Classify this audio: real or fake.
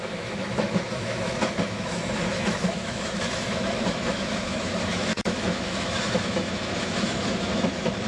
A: fake